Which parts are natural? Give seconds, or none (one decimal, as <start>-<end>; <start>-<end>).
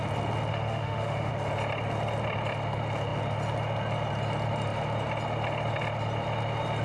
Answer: 0.0-0.5; 1.3-6.8